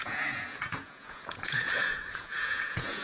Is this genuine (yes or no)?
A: no